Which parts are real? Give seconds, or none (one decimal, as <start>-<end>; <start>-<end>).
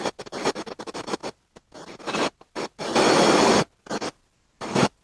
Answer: 0.0-5.0